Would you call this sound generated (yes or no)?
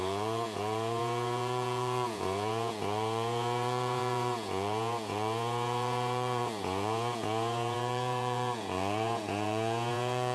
yes